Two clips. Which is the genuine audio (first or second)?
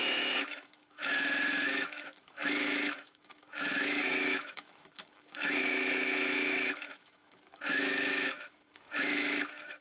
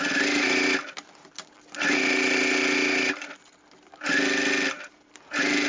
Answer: second